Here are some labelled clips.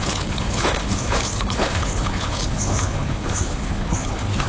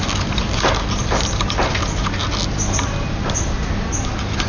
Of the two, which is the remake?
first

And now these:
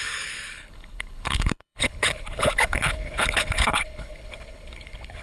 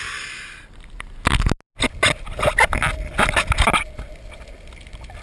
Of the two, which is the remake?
first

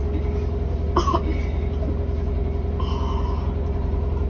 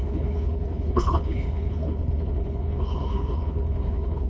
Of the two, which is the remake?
second